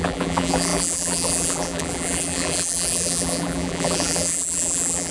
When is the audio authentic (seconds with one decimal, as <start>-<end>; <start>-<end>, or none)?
none